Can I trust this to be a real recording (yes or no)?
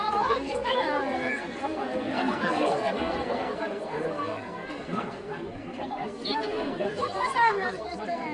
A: no